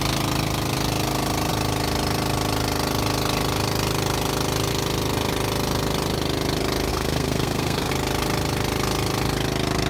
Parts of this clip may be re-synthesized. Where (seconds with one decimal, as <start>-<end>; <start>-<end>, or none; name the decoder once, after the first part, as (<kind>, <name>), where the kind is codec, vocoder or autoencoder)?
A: 6.9-7.9 (codec, SNAC)